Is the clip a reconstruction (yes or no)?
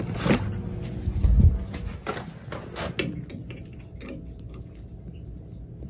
no